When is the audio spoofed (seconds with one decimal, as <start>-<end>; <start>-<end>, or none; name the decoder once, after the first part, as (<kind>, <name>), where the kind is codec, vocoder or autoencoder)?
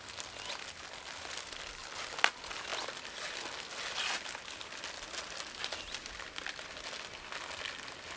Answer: none